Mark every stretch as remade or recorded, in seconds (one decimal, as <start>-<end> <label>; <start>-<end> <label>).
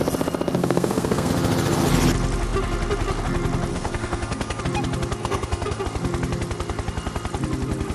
0.0-0.6 recorded; 0.6-1.3 remade; 1.3-3.7 recorded; 3.7-4.6 remade; 4.6-5.2 recorded; 5.2-5.8 remade; 5.8-7.9 recorded